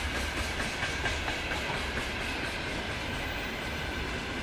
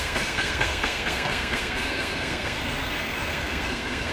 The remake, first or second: second